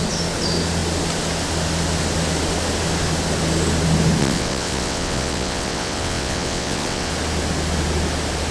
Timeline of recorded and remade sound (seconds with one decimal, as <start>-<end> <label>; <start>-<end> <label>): 0.0-4.2 recorded; 4.2-7.1 remade; 7.1-8.5 recorded